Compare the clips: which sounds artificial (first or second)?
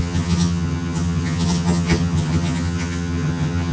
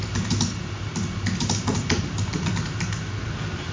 first